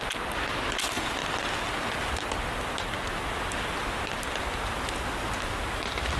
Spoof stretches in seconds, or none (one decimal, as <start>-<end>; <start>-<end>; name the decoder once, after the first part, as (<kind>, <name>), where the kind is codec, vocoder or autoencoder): none